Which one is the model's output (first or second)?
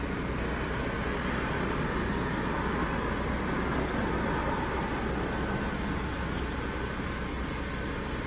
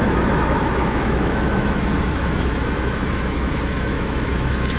second